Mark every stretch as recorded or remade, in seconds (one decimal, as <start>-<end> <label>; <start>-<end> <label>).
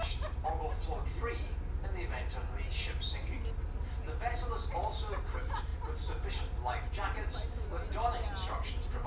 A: 0.0-9.1 recorded